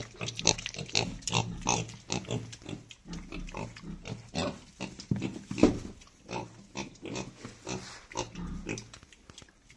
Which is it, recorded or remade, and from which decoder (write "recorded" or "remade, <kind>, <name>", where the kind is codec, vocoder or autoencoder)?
recorded